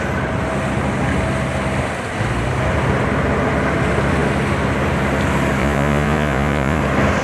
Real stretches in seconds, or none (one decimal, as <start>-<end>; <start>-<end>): 0.0-5.6; 6.8-7.2